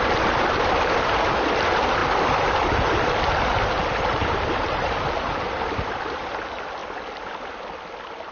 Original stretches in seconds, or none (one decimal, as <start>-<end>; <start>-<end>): 0.0-8.3